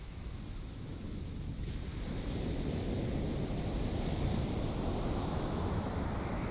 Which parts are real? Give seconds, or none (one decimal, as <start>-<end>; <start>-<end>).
1.3-5.2